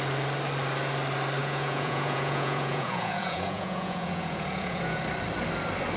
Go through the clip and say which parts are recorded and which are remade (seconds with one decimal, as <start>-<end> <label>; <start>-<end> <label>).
0.0-1.4 recorded; 1.4-5.0 remade; 5.0-6.0 recorded